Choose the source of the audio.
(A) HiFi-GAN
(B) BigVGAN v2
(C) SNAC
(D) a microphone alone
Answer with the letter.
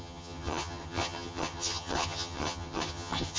A